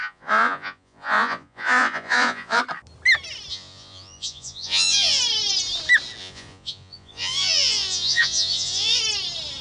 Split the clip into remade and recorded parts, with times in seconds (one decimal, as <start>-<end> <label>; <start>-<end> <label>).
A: 0.0-2.6 remade; 2.6-3.5 recorded; 3.5-5.2 remade; 5.2-6.2 recorded; 6.2-9.0 remade; 9.0-9.6 recorded